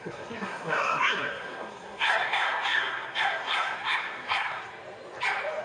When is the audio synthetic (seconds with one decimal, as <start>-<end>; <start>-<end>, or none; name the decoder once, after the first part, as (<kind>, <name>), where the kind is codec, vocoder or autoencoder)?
0.0-4.6 (codec, SNAC)

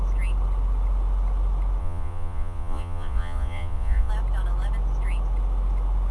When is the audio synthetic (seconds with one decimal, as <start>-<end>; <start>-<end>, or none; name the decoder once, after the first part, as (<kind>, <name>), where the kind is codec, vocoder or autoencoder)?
1.8-4.1 (vocoder, Vocos)

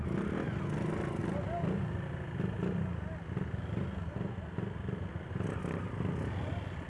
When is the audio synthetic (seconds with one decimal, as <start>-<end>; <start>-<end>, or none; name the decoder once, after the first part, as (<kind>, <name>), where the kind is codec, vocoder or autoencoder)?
none

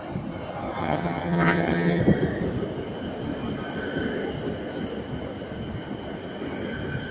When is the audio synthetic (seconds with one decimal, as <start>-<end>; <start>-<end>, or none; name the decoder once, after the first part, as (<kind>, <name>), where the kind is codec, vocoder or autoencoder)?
0.8-2.0 (vocoder, HiFi-GAN)

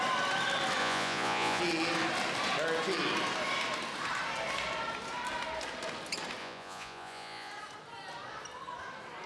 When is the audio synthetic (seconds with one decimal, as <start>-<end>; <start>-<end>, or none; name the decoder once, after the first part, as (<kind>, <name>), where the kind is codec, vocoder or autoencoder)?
0.8-1.6 (vocoder, Vocos); 6.4-7.5

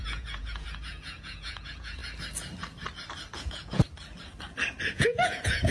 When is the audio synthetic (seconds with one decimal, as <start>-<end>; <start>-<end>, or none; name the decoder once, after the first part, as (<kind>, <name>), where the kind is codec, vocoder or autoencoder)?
0.0-2.0 (vocoder, Vocos); 3.4-3.8; 4.9-5.7